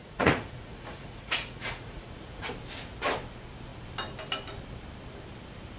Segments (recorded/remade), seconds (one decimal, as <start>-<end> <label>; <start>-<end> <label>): 0.0-2.5 remade; 2.5-5.8 recorded